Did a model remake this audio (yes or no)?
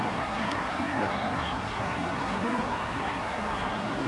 yes